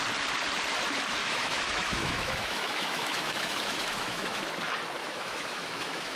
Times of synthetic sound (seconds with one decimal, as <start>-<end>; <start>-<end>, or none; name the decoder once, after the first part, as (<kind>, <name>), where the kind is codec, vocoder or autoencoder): 1.2-4.4 (autoencoder, DAC-VAE); 5.0-6.2

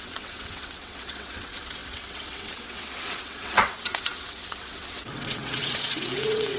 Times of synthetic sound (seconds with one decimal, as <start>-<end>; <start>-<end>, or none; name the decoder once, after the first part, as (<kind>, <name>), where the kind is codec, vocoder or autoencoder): 0.0-6.6 (vocoder, WaveNeXt)

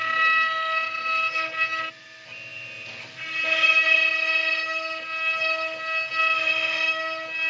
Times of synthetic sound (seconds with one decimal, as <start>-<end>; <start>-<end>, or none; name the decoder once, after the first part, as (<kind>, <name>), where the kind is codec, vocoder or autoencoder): none

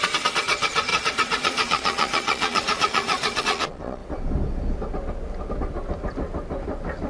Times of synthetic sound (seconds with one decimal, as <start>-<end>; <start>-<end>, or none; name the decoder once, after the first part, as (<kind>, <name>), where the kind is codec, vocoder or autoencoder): 0.0-4.0 (vocoder, Vocos)

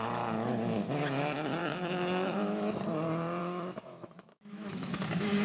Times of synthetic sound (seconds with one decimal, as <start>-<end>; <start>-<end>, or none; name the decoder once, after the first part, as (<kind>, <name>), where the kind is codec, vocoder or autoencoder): 1.6-2.8 (autoencoder, DAC-VAE); 3.4-4.9

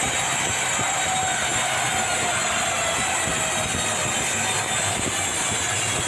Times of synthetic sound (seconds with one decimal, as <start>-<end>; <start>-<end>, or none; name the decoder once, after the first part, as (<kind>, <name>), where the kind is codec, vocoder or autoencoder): none

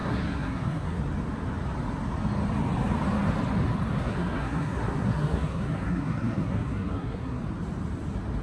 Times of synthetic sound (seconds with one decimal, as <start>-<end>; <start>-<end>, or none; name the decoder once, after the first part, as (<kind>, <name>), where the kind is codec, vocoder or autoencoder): 0.0-1.0 (codec, SNAC); 4.0-7.4